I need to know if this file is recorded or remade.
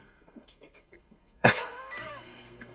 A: remade